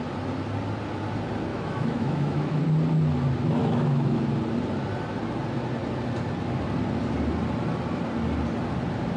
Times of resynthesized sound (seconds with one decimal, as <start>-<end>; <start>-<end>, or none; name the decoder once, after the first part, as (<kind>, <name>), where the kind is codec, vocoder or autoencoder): 1.5-2.6 (autoencoder, DAC-VAE); 3.6-4.2